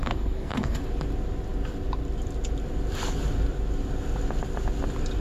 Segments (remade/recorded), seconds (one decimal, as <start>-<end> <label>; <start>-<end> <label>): 0.0-0.8 remade; 0.8-5.2 recorded